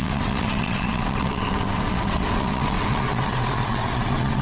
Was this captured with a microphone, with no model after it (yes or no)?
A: no